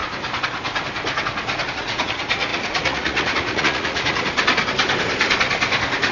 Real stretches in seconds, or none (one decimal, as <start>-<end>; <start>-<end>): 0.0-1.7; 4.3-6.1